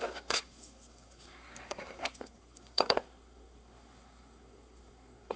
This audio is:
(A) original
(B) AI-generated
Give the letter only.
B